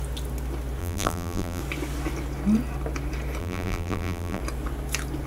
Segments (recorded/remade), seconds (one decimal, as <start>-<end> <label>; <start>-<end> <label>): 0.0-0.8 recorded; 0.8-1.6 remade; 1.6-3.4 recorded; 3.4-4.4 remade; 4.4-5.3 recorded